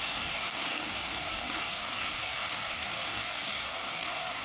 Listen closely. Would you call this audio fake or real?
fake